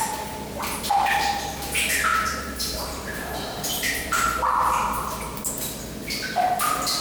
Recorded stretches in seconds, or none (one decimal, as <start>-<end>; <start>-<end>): 0.0-2.1; 5.1-7.0